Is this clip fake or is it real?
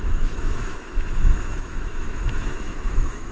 fake